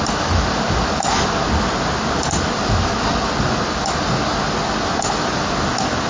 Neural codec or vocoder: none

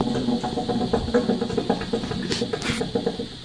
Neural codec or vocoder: none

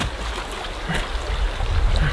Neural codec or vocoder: none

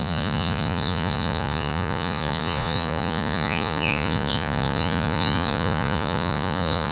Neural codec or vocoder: vocoder, Vocos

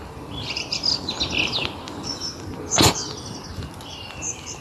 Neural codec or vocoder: none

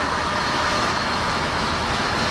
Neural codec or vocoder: autoencoder, DAC-VAE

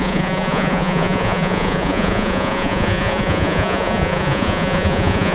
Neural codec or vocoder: vocoder, Vocos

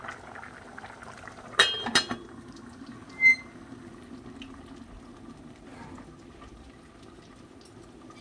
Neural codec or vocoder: none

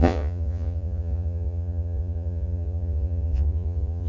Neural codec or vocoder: vocoder, Vocos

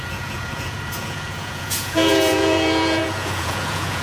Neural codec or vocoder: vocoder, Vocos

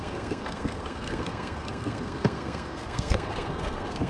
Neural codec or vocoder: codec, SNAC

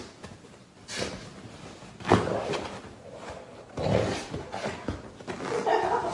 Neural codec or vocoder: none